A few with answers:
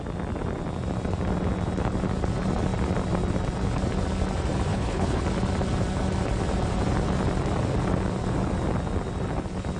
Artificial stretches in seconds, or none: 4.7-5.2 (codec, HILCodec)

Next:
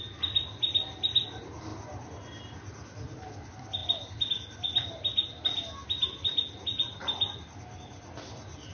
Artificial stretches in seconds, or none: none

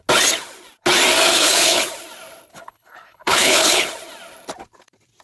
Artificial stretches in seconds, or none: 1.3-1.9 (codec, HILCodec); 2.5-3.9

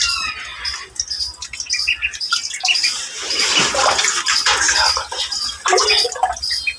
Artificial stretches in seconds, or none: none

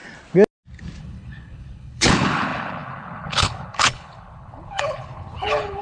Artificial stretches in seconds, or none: 1.0-5.8 (codec, HILCodec)